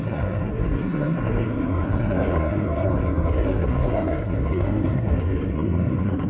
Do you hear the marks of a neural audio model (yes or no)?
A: yes